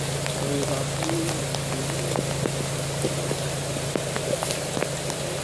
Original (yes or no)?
yes